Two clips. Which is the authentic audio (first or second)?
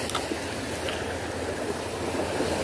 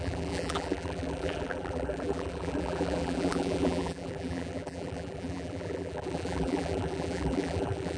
first